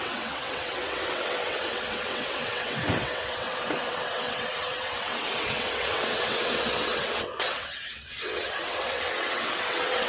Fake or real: fake